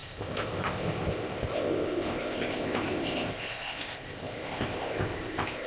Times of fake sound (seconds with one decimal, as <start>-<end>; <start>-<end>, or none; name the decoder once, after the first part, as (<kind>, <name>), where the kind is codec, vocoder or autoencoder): 0.0-5.7 (codec, ZipCodec)